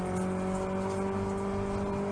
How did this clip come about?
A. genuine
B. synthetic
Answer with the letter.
A